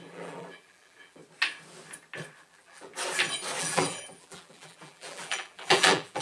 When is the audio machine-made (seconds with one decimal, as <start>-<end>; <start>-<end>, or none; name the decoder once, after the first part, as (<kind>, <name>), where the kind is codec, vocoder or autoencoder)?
0.0-1.2 (vocoder, BigVGAN v2); 2.4-2.9; 3.6-6.2